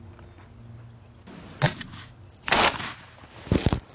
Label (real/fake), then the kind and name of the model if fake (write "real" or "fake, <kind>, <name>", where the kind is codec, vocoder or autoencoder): real